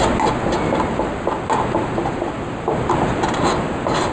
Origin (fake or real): real